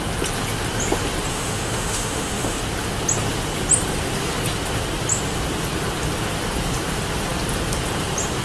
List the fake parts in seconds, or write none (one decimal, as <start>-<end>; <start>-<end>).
1.3-2.6